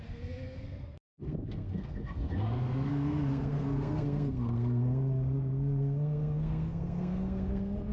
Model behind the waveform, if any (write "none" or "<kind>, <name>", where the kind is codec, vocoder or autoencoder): codec, SNAC